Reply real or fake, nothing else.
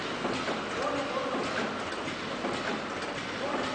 real